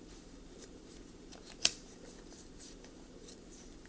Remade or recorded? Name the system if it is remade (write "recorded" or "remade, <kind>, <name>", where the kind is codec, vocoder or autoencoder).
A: remade, vocoder, BigVGAN v2